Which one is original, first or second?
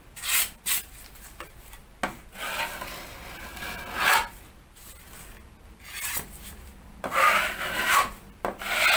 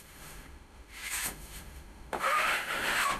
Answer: first